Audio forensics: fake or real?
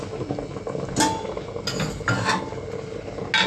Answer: real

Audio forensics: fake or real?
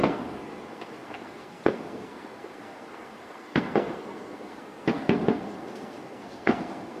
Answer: fake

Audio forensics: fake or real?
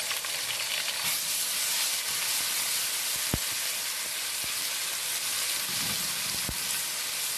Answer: real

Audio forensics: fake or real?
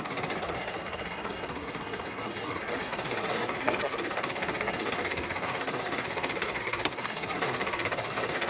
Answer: fake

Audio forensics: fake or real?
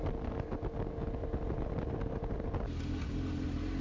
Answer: real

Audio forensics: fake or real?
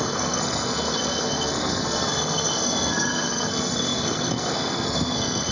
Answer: fake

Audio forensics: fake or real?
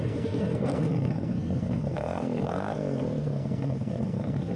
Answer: fake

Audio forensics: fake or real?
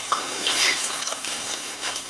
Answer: fake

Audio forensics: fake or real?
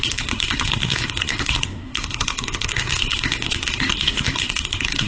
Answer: fake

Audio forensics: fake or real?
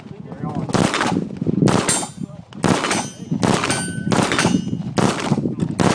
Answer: real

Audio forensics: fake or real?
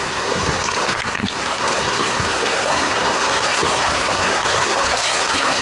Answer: fake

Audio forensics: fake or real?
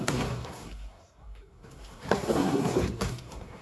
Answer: fake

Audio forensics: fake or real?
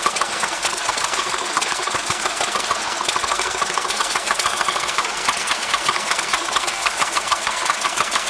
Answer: fake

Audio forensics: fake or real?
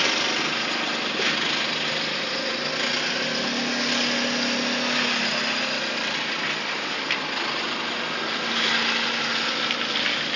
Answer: real